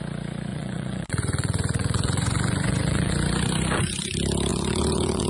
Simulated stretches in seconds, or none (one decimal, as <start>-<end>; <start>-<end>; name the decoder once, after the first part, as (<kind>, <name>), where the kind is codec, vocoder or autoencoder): 0.5-3.1 (vocoder, Vocos); 4.5-5.3